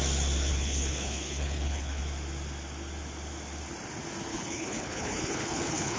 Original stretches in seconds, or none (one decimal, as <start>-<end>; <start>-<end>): 0.0-0.5; 2.0-4.3